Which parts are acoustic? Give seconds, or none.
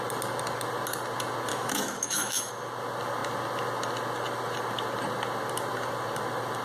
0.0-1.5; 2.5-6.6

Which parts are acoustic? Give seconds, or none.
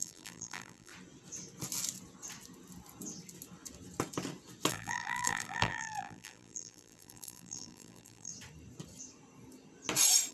0.9-4.7; 8.3-10.3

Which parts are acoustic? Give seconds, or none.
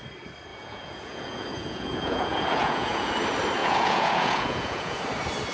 0.0-0.5; 3.1-3.6; 5.0-5.5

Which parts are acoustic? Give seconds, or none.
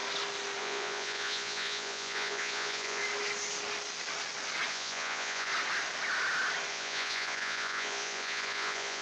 0.0-0.6; 3.0-4.7; 5.5-6.7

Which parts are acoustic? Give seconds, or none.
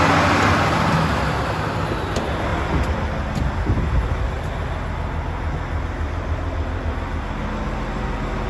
0.0-2.5; 3.4-8.5